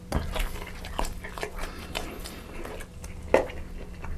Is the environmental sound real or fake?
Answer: real